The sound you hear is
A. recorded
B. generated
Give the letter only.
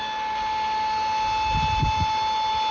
A